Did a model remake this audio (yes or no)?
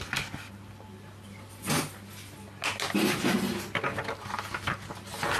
no